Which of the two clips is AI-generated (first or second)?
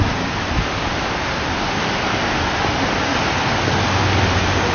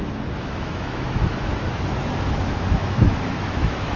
second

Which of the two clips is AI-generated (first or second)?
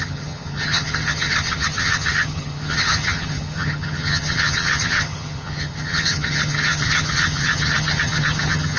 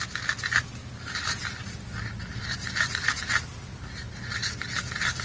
first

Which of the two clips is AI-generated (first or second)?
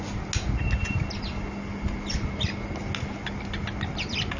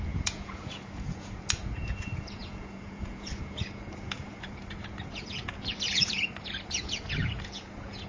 second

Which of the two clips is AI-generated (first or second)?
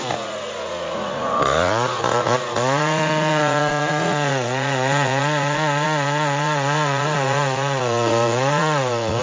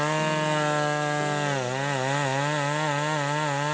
first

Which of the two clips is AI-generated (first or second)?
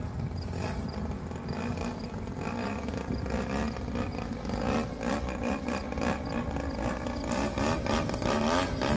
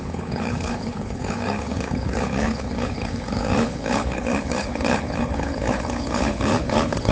second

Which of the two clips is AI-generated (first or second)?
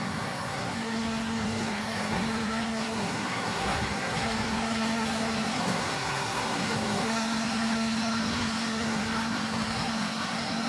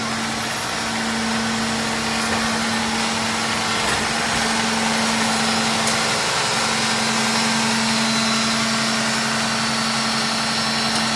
first